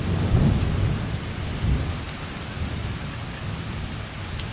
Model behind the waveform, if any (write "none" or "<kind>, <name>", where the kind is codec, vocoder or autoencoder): none